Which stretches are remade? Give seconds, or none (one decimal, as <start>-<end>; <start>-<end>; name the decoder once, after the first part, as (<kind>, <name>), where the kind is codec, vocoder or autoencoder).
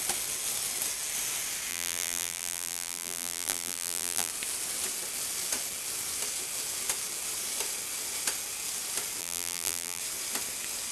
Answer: 1.7-4.3 (vocoder, BigVGAN v2); 9.2-10.0